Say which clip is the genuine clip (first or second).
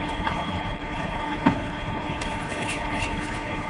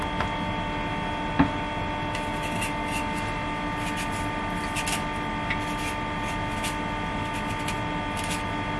second